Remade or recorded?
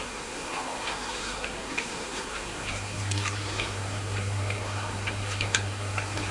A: remade